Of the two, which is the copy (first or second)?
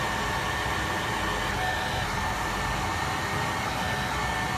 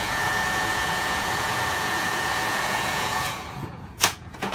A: second